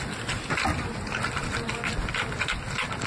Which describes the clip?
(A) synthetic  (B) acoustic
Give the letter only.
B